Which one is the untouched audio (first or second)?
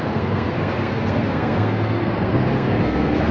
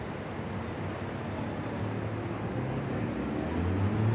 second